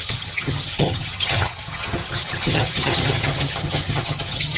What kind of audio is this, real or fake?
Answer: fake